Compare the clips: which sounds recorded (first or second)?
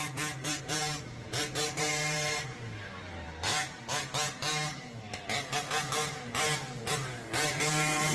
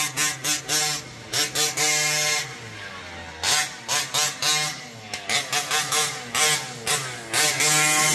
second